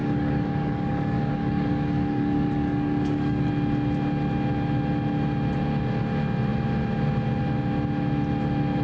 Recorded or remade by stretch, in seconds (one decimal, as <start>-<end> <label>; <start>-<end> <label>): 0.0-3.5 remade; 3.5-8.8 recorded